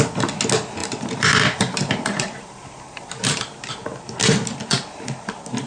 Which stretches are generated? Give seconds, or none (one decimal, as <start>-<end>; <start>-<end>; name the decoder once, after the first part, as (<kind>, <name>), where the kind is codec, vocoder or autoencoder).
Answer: 0.8-3.7 (vocoder, BigVGAN v2)